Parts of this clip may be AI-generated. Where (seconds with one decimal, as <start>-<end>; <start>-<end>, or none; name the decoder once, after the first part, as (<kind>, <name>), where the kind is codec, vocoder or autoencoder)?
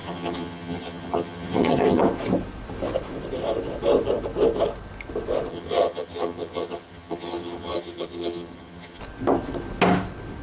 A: 0.0-2.0 (vocoder, HiFi-GAN); 5.5-9.0